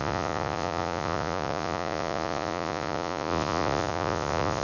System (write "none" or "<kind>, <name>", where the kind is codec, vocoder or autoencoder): vocoder, Vocos